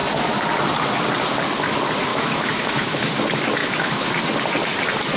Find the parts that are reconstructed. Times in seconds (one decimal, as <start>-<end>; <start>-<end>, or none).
2.1-3.0; 3.6-4.1